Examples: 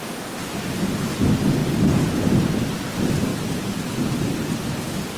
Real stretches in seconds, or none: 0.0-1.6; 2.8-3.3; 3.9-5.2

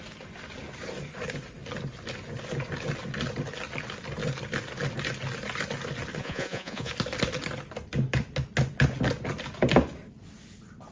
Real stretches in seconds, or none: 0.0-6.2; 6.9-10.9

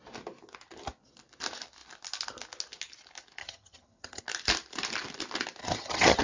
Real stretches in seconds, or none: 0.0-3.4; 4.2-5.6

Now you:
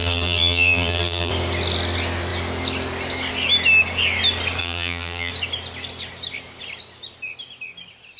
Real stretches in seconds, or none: 1.3-4.6; 5.3-8.2

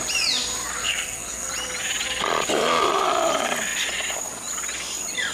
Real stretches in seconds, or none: 0.0-0.8; 1.5-5.3